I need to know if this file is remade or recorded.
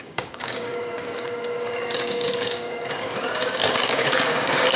remade